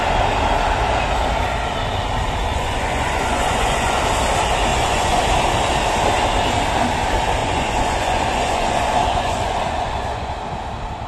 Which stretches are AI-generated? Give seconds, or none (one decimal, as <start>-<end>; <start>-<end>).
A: 2.5-4.0; 4.7-5.2; 7.4-10.3